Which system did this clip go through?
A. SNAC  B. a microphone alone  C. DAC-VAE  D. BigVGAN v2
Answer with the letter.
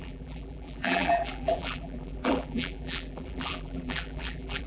D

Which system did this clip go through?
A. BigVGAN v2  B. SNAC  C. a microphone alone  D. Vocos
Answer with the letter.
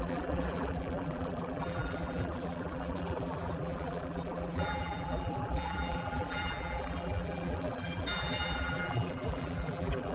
A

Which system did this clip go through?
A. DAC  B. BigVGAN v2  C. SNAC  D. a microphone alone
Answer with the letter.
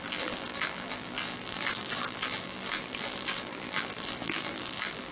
B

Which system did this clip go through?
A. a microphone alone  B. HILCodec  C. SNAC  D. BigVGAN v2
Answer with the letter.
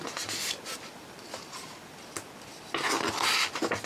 A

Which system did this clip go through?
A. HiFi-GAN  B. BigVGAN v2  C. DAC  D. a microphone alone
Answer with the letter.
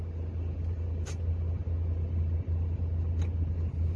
D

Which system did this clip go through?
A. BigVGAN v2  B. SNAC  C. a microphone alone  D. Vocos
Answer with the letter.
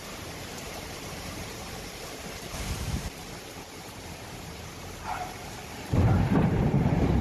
A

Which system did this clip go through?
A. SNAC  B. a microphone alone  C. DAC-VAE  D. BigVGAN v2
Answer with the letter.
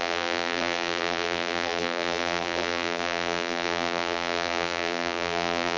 D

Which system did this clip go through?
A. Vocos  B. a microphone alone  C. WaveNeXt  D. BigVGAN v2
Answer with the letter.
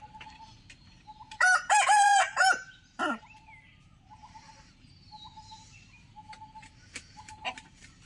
D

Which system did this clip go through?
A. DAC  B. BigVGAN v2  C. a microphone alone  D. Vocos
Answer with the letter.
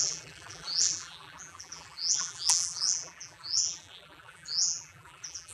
B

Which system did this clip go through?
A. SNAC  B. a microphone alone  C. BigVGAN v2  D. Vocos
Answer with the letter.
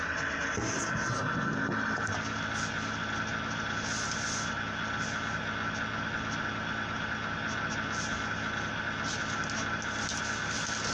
B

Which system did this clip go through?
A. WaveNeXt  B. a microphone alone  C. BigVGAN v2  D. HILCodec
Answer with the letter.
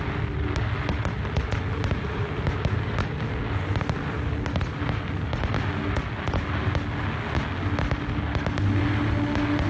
B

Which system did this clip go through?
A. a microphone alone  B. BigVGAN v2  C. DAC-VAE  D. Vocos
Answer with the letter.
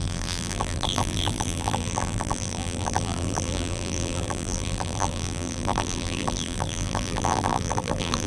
B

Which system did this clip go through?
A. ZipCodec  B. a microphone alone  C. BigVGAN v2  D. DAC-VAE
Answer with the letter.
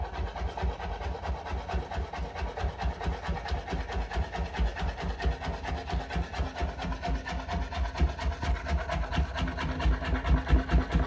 B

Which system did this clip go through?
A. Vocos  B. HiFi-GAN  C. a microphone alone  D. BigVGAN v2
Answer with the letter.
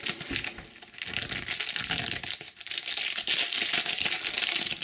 C